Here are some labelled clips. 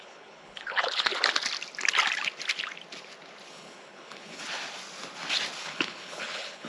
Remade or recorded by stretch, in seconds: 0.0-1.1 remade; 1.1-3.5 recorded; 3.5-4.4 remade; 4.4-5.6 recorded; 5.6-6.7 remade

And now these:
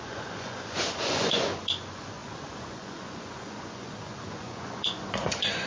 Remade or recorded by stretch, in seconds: 0.0-5.7 remade

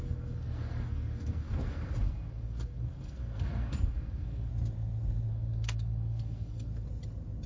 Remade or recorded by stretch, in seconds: 0.0-4.5 remade; 4.5-5.3 recorded; 5.3-6.7 remade; 6.7-7.5 recorded

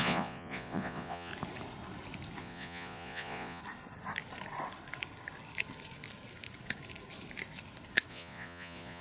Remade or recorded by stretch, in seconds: 0.0-1.3 remade; 1.3-2.4 recorded; 2.4-3.6 remade; 3.6-8.1 recorded; 8.1-9.0 remade

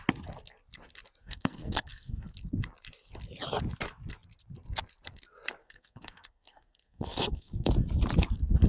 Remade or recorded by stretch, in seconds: 0.0-1.2 recorded; 1.2-2.3 remade; 2.3-5.6 recorded; 5.6-7.7 remade; 7.7-8.7 recorded